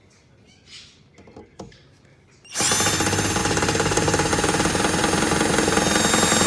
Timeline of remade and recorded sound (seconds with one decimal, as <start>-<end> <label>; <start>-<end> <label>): 0.0-3.4 recorded; 3.4-4.3 remade; 4.3-6.5 recorded